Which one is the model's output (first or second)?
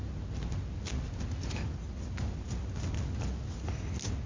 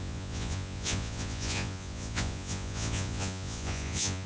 second